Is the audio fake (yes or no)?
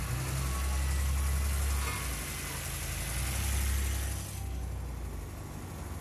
no